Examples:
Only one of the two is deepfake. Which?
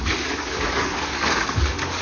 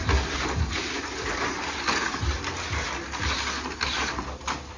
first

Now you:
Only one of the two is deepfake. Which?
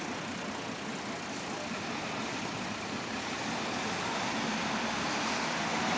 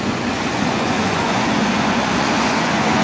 second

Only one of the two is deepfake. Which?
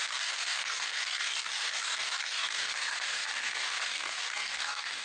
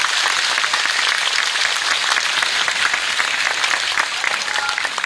first